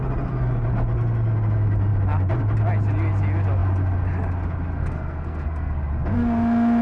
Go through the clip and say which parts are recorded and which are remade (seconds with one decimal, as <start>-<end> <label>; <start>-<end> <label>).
0.0-4.8 recorded; 4.8-5.9 remade; 5.9-6.8 recorded